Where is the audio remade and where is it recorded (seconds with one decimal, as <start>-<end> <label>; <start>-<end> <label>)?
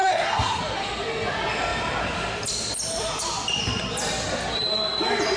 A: 0.0-0.6 remade; 0.6-5.4 recorded